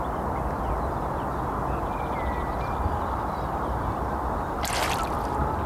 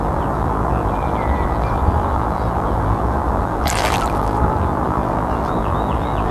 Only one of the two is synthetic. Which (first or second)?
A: second